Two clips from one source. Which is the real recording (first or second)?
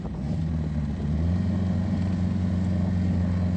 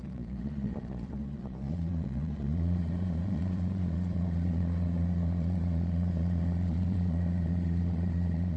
first